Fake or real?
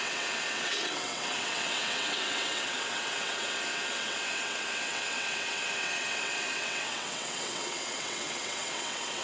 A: fake